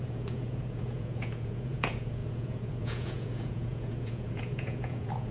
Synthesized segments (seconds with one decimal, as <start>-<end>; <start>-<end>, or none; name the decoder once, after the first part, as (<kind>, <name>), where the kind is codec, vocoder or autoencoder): 0.0-5.3 (vocoder, Vocos)